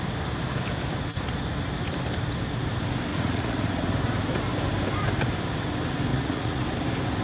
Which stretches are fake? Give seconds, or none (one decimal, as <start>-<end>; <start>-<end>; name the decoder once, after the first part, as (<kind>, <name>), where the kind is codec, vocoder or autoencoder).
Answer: 3.1-3.9 (vocoder, Vocos); 6.1-6.6